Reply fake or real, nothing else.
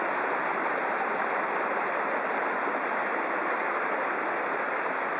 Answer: real